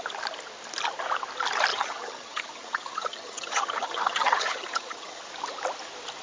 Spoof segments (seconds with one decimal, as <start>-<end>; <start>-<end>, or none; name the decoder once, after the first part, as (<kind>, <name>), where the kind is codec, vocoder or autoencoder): 1.7-5.3 (vocoder, HiFi-GAN)

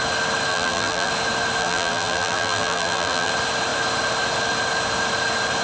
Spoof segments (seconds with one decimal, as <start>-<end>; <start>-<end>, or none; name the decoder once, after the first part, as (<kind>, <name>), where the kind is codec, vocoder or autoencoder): 0.5-1.1 (vocoder, BigVGAN v2); 1.6-3.3

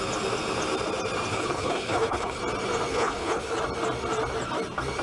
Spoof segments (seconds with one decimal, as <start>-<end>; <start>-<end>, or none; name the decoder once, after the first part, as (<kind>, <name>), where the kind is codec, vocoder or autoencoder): 1.3-2.4 (codec, HILCodec); 2.9-3.6

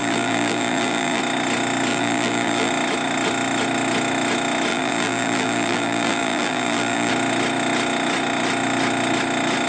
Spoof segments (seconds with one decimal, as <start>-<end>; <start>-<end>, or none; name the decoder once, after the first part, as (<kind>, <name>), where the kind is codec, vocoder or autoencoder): 0.0-1.2 (vocoder, BigVGAN v2); 1.9-2.7; 4.7-7.1